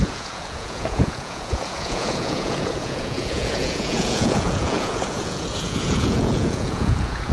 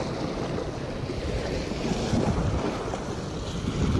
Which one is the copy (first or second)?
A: first